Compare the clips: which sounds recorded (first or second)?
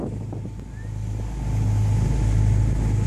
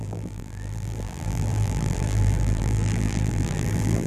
first